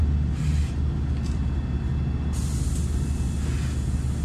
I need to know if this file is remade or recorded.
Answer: recorded